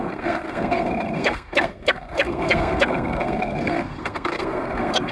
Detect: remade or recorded remade